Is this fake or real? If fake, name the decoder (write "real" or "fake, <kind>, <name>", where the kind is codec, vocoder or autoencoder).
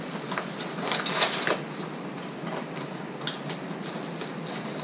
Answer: real